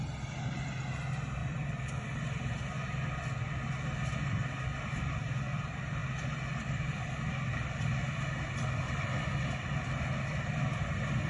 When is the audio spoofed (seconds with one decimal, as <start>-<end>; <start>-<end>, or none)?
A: 1.4-2.5